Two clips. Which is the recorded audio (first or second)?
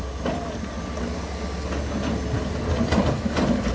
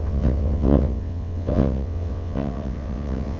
first